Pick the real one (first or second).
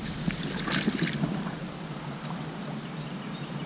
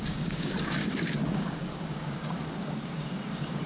first